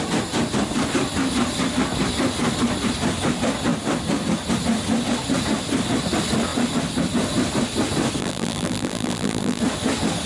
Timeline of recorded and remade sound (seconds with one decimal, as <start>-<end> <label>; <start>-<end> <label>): 0.0-8.2 recorded; 8.2-9.6 remade; 9.6-10.3 recorded